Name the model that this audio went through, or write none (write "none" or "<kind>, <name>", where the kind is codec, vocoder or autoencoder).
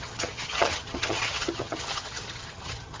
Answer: vocoder, HiFi-GAN